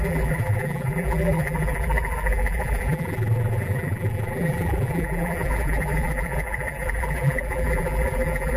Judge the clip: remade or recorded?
remade